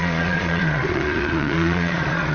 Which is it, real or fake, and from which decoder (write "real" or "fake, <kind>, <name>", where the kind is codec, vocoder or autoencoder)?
fake, vocoder, Vocos